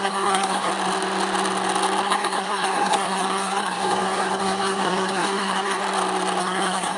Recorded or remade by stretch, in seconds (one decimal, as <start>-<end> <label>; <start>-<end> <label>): 0.0-0.7 remade; 0.7-2.0 recorded; 2.0-5.8 remade; 5.8-6.4 recorded; 6.4-7.0 remade